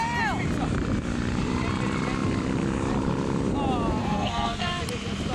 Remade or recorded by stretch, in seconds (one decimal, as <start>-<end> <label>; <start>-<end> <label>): 0.0-4.0 recorded; 4.0-4.8 remade; 4.8-5.3 recorded